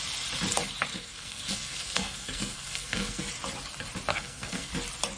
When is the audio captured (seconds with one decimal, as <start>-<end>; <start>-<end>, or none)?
0.0-0.9; 3.3-4.1; 4.7-5.2